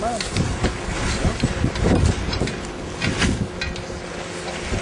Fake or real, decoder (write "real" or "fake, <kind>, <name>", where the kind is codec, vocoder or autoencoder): real